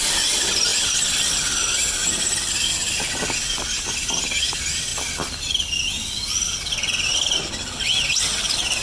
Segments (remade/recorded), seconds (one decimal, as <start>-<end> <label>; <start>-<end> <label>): 0.0-8.8 recorded